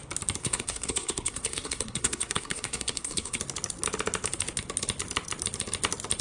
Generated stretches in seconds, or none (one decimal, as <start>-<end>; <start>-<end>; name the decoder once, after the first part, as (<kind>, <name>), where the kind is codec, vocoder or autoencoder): 0.4-3.4 (codec, SNAC)